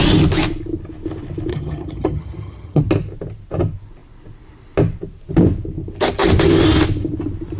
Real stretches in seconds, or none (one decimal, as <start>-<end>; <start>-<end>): 0.0-1.5; 2.8-7.6